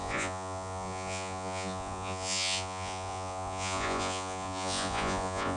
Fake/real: fake